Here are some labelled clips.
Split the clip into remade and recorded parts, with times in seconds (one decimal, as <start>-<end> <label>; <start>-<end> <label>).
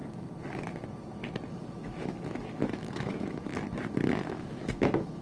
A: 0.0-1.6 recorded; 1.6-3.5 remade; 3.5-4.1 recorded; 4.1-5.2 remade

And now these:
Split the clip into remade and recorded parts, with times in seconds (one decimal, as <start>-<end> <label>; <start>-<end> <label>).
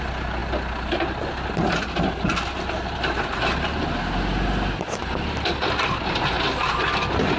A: 0.0-7.4 recorded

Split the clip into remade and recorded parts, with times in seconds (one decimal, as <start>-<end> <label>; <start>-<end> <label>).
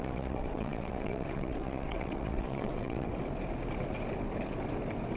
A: 0.0-3.1 remade; 3.1-5.2 recorded